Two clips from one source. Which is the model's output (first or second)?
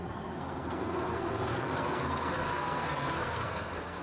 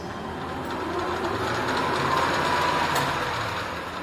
first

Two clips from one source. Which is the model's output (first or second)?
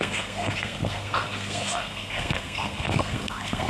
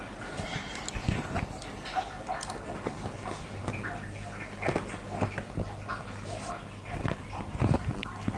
first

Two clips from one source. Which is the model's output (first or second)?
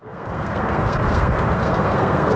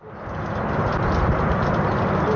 first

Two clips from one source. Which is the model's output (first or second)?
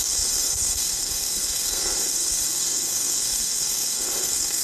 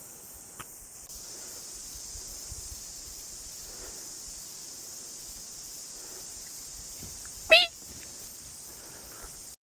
first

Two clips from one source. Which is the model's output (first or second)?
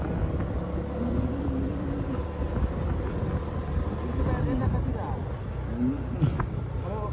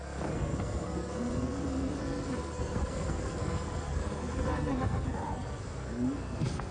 second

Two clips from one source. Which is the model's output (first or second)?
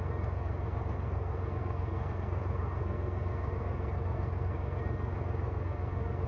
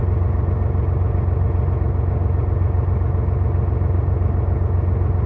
first